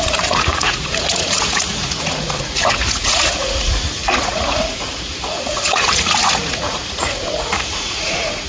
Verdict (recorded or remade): remade